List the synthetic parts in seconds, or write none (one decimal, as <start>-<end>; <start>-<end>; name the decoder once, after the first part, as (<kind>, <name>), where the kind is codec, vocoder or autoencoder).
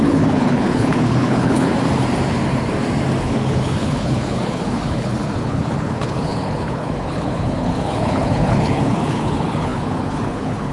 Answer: 0.0-1.7 (codec, HILCodec); 3.2-10.7